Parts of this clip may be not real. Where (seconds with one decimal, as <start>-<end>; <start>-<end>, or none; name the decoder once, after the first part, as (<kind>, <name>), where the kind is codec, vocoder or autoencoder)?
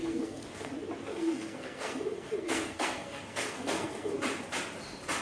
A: 0.0-0.7 (codec, SNAC); 1.1-4.2